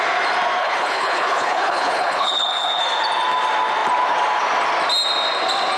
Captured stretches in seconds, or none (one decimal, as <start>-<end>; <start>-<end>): 0.0-0.6; 2.8-5.8